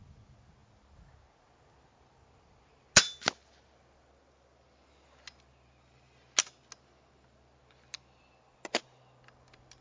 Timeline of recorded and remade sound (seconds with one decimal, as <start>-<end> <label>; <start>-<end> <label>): 0.0-9.8 recorded